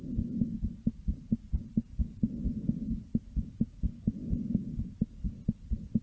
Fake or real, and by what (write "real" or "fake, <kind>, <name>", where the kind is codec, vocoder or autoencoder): real